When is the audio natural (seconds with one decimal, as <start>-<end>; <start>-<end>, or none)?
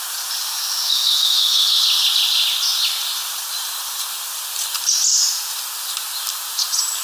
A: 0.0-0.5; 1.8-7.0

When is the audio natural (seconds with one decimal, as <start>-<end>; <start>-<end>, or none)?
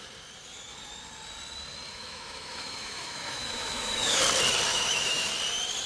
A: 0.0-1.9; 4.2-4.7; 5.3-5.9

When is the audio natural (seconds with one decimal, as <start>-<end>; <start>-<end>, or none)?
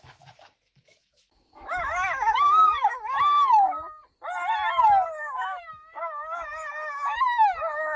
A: 4.0-5.2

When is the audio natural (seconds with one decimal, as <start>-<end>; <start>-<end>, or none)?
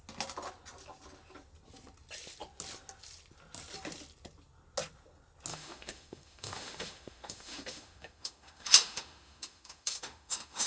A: 0.0-5.5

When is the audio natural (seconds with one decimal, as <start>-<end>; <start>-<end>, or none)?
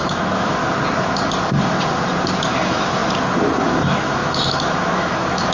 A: 0.6-2.5; 3.0-3.6